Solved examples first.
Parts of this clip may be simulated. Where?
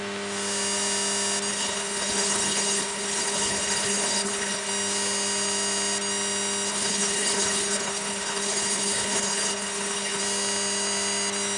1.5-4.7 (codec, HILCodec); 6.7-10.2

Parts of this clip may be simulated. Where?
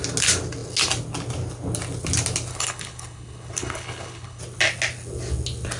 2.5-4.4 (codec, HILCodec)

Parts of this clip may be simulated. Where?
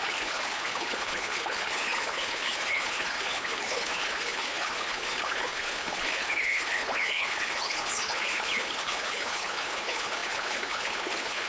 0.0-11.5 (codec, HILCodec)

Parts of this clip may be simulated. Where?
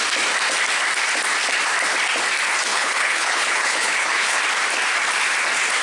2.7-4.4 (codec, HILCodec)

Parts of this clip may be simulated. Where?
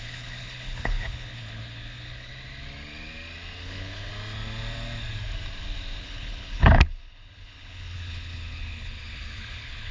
0.0-2.3 (codec, HILCodec); 3.6-4.1; 6.0-9.9